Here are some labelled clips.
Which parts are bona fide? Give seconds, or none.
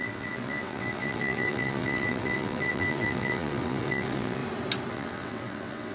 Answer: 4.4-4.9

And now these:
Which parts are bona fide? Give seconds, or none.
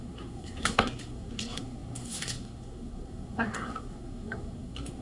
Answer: none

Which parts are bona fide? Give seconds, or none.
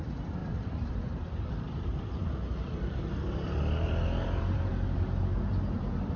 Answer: none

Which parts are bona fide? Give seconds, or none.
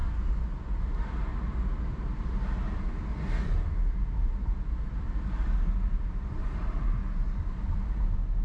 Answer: 0.0-0.8; 1.3-4.0; 7.0-7.8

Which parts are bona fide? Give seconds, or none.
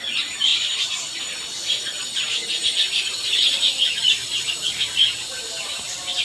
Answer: 0.0-6.2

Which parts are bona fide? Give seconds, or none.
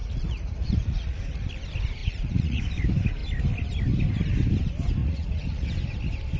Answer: 1.5-2.0; 2.6-5.0; 5.7-6.4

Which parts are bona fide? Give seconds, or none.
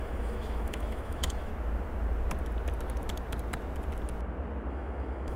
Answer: 1.5-4.7